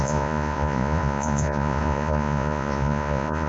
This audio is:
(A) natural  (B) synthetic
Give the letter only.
B